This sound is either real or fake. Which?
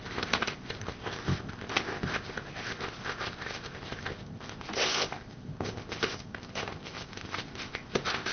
fake